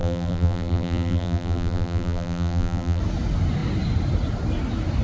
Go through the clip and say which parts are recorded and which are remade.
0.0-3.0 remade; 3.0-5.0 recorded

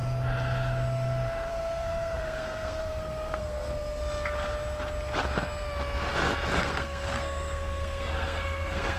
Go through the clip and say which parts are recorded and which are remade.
0.0-1.5 recorded; 1.5-4.0 remade; 4.0-6.6 recorded; 6.6-9.0 remade

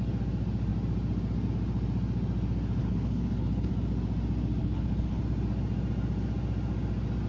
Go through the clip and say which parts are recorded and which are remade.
0.0-2.8 recorded; 2.8-3.7 remade; 3.7-4.6 recorded; 4.6-5.2 remade; 5.2-7.3 recorded

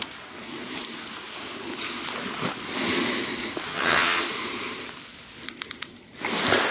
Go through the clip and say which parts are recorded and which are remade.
0.0-3.7 recorded; 3.7-4.2 remade; 4.2-6.7 recorded

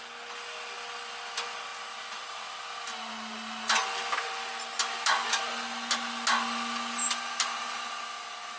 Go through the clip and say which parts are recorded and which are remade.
0.0-8.6 recorded

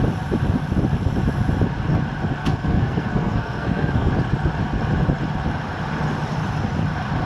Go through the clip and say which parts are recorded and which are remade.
0.0-2.4 recorded; 2.4-4.1 remade; 4.1-7.3 recorded

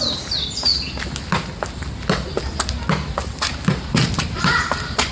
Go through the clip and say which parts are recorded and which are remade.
0.0-5.1 recorded